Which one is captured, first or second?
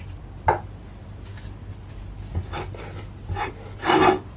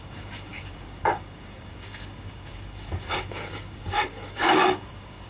first